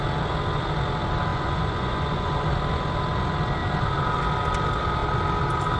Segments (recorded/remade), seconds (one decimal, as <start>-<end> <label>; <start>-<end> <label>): 0.0-1.3 recorded; 1.3-2.4 remade; 2.4-5.8 recorded

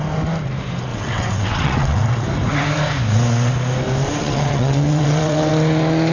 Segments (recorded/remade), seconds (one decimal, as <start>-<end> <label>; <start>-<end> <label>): 0.0-0.9 recorded; 0.9-2.0 remade; 2.0-4.2 recorded; 4.2-5.5 remade; 5.5-6.1 recorded

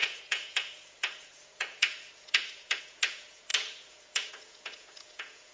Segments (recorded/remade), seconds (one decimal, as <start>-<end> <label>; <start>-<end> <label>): 0.0-5.5 remade

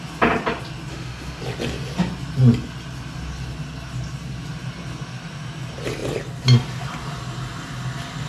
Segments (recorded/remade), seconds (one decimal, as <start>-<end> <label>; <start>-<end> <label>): 0.0-0.9 recorded; 0.9-1.4 remade; 1.4-8.3 recorded

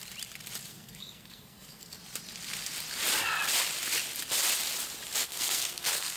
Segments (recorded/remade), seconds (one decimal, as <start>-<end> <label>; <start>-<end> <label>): 0.0-0.7 recorded; 0.7-2.0 remade; 2.0-5.2 recorded; 5.2-6.2 remade

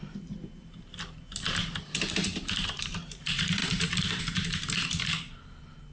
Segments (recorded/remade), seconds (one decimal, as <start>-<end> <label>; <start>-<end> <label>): 0.0-5.9 remade

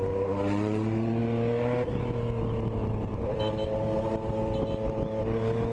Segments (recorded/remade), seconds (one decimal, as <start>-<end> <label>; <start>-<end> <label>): 0.0-5.7 recorded

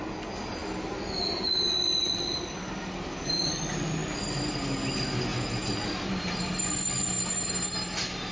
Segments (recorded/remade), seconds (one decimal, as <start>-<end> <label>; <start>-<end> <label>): 0.0-0.6 recorded; 0.6-3.5 remade; 3.5-4.0 recorded; 4.0-4.6 remade; 4.6-8.3 recorded